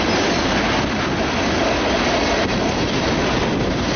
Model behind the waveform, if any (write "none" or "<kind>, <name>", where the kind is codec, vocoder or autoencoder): none